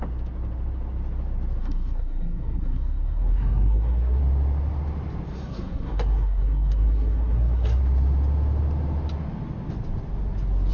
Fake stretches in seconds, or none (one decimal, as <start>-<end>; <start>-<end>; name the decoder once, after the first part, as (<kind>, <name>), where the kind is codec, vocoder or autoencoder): 1.6-4.2 (codec, SNAC); 5.3-7.8